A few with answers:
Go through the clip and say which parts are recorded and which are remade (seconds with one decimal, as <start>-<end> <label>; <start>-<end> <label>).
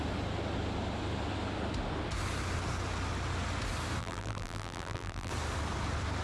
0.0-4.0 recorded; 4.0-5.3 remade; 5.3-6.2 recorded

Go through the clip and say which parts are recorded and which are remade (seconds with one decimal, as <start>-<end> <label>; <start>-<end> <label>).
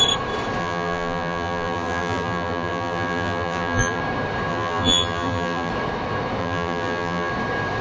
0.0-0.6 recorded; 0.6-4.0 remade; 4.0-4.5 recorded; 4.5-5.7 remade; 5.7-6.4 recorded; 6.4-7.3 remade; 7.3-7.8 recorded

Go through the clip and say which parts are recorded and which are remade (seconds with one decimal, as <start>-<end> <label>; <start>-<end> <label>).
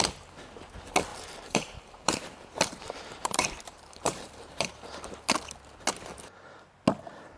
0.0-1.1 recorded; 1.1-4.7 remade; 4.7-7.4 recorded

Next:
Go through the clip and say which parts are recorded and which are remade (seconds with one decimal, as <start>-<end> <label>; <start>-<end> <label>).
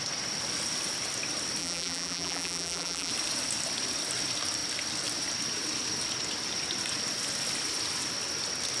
0.0-1.6 recorded; 1.6-3.1 remade; 3.1-8.8 recorded